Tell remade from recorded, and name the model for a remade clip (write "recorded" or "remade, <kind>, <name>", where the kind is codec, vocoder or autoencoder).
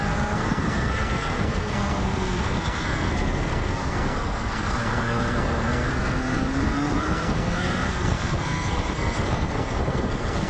remade, codec, SNAC